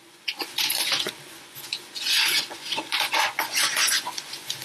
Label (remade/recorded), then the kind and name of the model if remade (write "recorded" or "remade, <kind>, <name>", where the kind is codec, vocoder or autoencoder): remade, vocoder, Vocos